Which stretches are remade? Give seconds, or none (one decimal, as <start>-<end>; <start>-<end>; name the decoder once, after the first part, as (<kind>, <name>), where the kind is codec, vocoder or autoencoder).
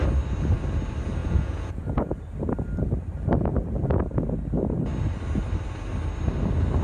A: 1.2-2.1 (vocoder, Vocos)